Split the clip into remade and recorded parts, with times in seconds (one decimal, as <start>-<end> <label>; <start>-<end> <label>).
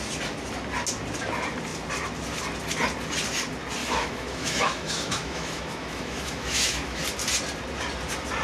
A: 0.0-3.8 recorded; 3.8-7.0 remade; 7.0-8.4 recorded